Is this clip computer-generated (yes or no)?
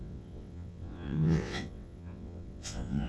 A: yes